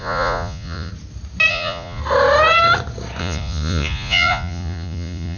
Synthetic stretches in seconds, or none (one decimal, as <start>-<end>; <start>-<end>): 0.0-0.9; 1.5-2.0; 3.2-5.4